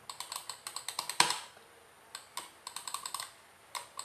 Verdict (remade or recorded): recorded